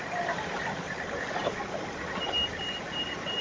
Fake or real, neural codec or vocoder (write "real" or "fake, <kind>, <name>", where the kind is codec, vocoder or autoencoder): real